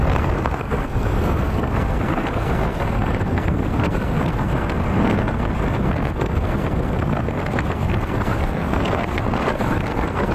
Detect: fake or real fake